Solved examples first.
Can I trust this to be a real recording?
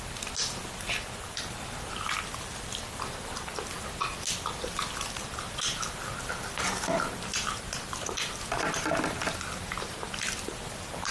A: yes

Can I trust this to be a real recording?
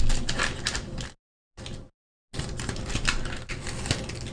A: yes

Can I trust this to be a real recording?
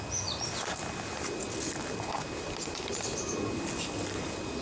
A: yes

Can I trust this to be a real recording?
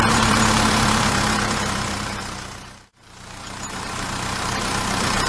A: no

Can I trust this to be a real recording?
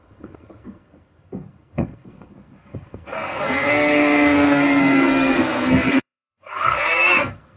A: no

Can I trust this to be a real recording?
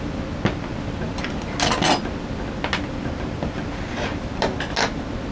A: yes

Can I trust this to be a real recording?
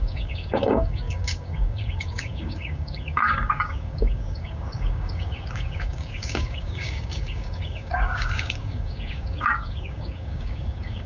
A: no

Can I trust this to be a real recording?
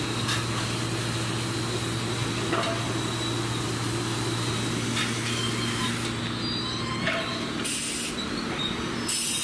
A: yes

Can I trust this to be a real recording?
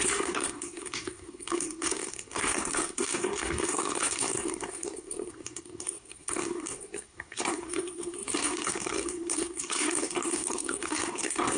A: no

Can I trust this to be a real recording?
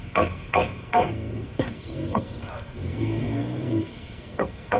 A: no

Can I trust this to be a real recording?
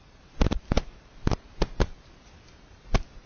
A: no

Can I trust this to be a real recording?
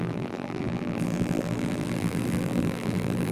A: no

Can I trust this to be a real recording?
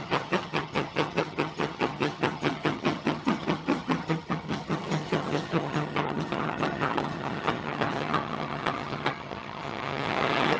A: no